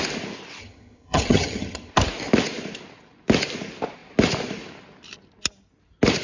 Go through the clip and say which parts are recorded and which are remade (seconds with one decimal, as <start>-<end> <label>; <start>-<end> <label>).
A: 0.0-0.6 recorded; 0.6-1.9 remade; 1.9-6.2 recorded